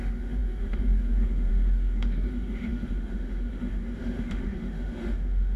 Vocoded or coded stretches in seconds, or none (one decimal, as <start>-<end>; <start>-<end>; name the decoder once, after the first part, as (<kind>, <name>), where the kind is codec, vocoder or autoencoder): 0.0-5.6 (autoencoder, DAC-VAE)